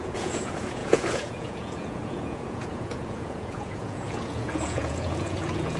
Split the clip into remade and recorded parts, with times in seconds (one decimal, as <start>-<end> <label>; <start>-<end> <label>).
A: 0.0-5.8 remade